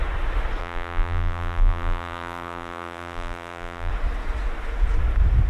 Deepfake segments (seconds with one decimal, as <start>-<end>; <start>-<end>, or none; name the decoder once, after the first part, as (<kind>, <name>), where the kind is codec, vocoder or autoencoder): 0.6-3.9 (vocoder, BigVGAN v2)